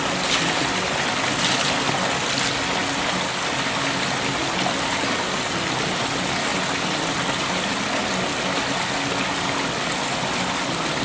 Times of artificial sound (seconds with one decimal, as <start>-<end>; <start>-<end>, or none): none